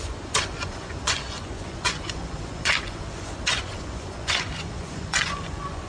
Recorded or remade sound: remade